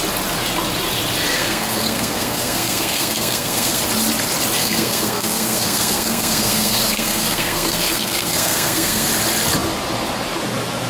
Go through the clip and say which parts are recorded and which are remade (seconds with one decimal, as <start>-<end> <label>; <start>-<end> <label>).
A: 0.0-1.3 recorded; 1.3-3.8 remade; 3.8-4.6 recorded; 4.6-9.1 remade; 9.1-10.9 recorded